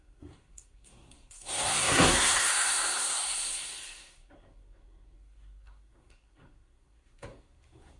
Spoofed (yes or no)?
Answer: yes